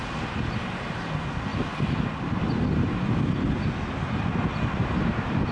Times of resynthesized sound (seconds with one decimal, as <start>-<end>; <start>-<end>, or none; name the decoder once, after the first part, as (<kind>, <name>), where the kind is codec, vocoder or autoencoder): none